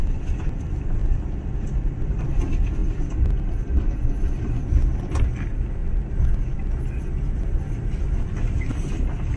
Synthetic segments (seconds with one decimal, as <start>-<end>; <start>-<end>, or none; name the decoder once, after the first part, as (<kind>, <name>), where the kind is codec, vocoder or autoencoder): none